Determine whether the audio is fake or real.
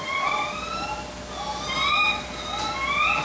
real